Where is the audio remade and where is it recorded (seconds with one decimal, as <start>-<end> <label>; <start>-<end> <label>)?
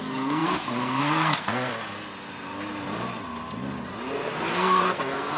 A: 0.0-1.7 remade; 1.7-4.5 recorded; 4.5-5.4 remade